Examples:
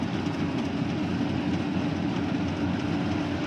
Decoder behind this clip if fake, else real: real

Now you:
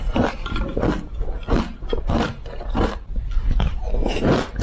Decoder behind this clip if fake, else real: real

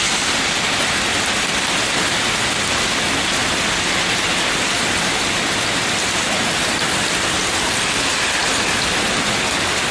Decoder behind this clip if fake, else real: real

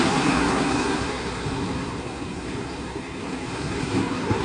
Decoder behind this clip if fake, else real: fake, codec, SNAC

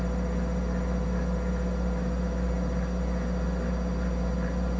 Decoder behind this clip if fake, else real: real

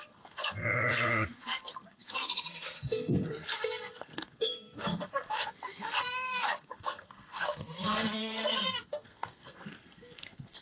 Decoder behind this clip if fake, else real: fake, codec, SNAC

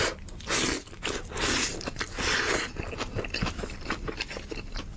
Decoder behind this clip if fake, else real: real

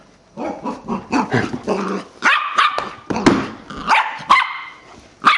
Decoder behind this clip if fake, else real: real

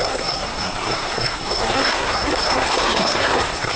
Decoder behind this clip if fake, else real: fake, codec, SNAC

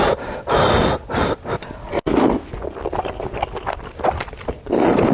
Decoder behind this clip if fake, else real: real